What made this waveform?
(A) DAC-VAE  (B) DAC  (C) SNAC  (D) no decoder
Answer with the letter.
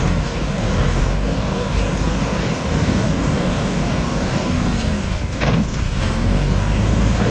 B